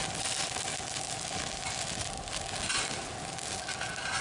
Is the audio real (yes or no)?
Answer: yes